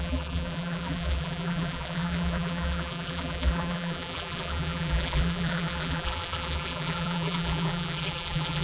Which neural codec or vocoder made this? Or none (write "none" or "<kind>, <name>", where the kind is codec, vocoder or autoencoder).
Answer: vocoder, BigVGAN v2